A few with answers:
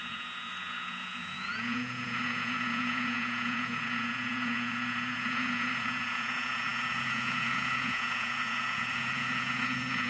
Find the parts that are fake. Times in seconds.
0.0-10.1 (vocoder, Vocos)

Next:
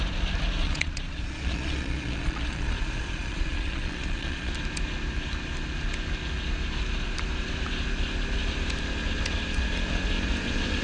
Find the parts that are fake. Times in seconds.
0.6-4.5 (vocoder, Vocos)

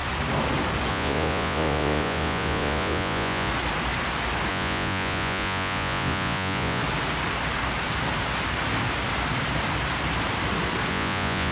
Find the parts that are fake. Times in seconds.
0.9-3.5 (vocoder, Vocos); 4.5-6.8; 10.9-11.5

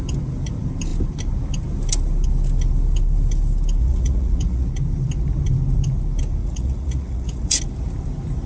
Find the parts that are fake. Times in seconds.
3.8-4.7 (vocoder, Vocos); 6.4-7.6

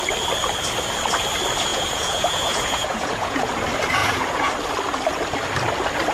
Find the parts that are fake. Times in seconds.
1.7-3.5 (vocoder, Vocos); 4.0-4.5

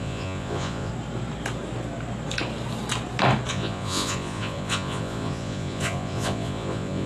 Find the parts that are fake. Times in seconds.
0.0-0.9 (vocoder, Vocos); 3.5-7.1